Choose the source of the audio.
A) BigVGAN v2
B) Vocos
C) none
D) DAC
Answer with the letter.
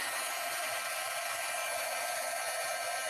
C